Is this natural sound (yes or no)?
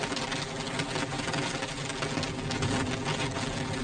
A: yes